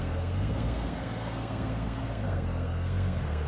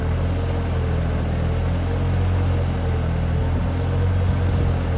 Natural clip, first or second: second